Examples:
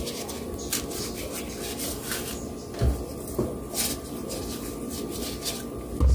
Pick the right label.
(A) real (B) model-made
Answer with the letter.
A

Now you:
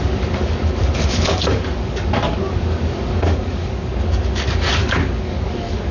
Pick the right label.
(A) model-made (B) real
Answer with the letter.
A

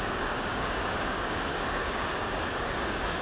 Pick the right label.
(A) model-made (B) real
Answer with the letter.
A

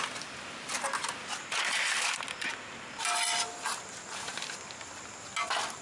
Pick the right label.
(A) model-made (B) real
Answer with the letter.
B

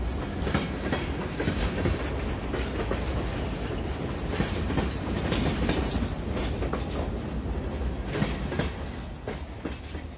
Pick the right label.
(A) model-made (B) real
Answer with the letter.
B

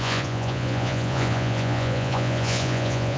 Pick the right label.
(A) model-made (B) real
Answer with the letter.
A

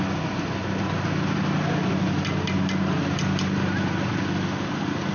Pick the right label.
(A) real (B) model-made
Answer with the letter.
A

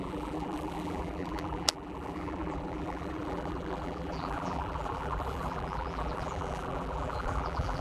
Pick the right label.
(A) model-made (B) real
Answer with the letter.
A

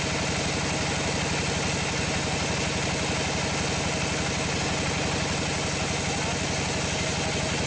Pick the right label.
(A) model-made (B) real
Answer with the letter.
B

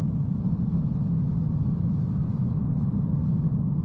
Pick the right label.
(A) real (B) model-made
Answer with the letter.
A